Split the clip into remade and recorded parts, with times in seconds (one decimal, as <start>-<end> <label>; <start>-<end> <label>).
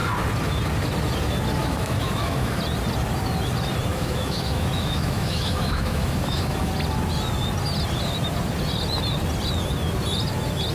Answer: 0.0-1.6 recorded; 1.6-2.6 remade; 2.6-3.9 recorded; 3.9-6.7 remade; 6.7-10.7 recorded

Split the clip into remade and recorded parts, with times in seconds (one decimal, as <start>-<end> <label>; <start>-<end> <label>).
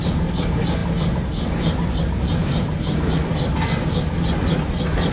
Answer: 0.0-5.1 recorded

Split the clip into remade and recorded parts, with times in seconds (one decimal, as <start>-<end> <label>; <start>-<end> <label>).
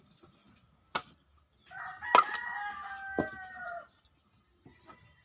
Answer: 0.0-5.2 recorded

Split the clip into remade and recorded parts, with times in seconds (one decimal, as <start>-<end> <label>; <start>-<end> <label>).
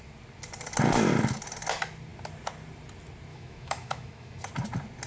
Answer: 0.0-3.3 recorded; 3.3-4.4 remade; 4.4-5.1 recorded